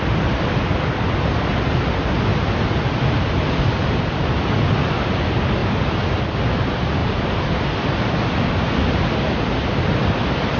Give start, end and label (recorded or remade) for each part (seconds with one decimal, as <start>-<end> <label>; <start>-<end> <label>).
0.0-2.3 recorded; 2.3-3.6 remade; 3.6-5.6 recorded; 5.6-6.4 remade; 6.4-10.6 recorded